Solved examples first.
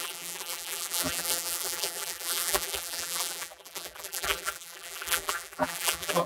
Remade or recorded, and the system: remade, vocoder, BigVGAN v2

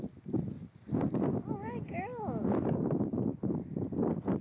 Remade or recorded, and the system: recorded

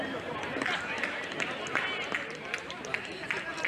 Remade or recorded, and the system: remade, vocoder, BigVGAN v2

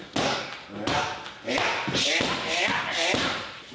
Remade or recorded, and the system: recorded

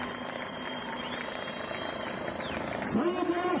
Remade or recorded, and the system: remade, vocoder, BigVGAN v2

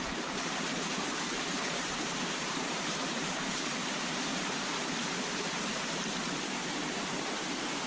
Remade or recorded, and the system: remade, vocoder, BigVGAN v2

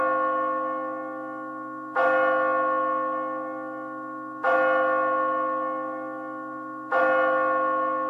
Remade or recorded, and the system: recorded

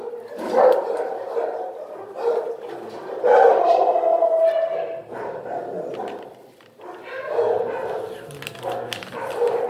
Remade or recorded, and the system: recorded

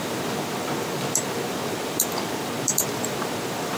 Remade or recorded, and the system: remade, vocoder, BigVGAN v2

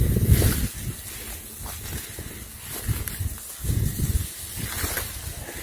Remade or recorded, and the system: recorded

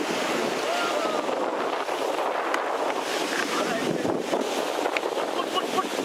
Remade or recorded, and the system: recorded